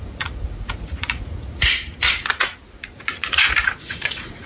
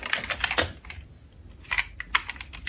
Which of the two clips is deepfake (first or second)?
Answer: first